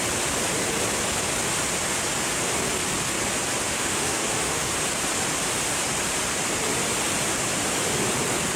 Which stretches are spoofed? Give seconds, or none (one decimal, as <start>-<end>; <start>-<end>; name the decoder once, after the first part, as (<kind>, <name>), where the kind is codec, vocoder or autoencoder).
3.6-4.7 (autoencoder, DAC-VAE)

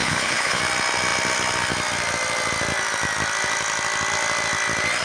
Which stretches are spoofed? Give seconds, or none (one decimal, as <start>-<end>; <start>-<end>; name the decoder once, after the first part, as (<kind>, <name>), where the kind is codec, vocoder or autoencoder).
0.0-0.6 (codec, HILCodec)

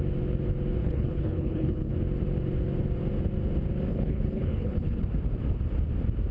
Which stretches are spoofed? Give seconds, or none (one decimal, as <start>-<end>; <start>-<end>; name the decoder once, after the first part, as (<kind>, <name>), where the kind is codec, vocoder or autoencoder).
0.8-1.9 (codec, HILCodec); 3.9-5.0